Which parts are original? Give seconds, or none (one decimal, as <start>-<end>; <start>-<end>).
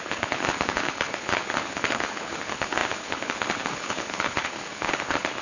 none